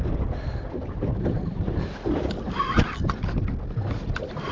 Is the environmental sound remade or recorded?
recorded